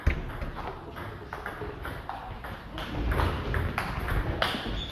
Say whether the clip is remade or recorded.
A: recorded